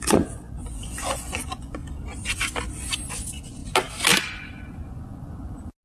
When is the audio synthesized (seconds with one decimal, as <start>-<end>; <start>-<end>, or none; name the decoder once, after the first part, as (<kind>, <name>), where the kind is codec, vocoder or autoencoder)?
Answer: 0.0-1.8 (vocoder, Vocos); 3.1-3.6; 4.3-5.8